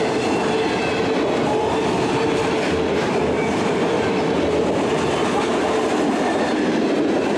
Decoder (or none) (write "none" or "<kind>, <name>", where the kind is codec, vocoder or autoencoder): none